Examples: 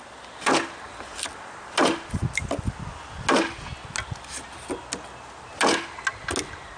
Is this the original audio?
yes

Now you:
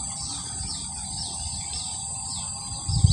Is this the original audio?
yes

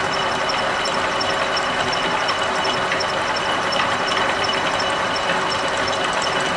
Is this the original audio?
yes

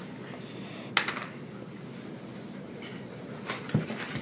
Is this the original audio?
yes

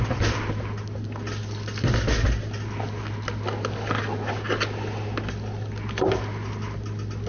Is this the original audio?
yes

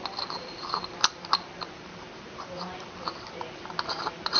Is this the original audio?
no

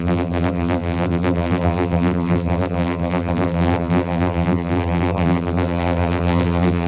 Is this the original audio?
no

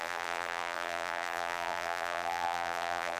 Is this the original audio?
no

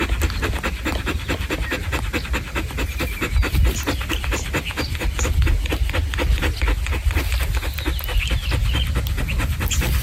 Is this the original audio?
yes